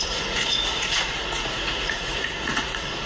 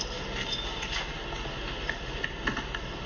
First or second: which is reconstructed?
first